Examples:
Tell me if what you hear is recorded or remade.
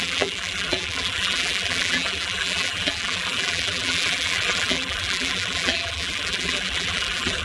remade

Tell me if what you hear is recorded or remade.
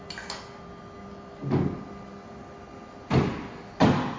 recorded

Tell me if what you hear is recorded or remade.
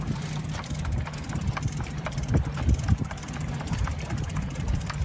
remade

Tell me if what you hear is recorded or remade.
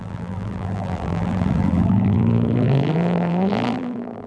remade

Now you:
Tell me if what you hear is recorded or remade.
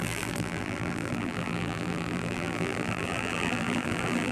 remade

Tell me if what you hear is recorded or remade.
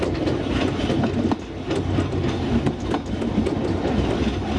recorded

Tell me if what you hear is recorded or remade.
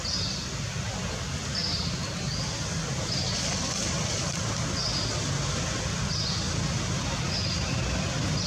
recorded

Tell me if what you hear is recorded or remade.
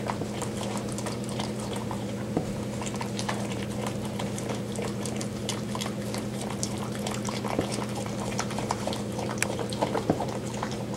remade